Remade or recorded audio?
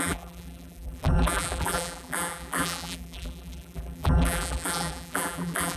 remade